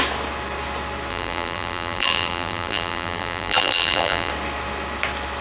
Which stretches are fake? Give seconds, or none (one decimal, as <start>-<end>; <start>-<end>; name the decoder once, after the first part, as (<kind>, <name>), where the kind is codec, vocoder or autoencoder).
1.1-4.3 (vocoder, BigVGAN v2)